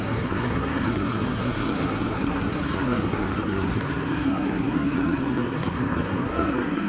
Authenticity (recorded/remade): remade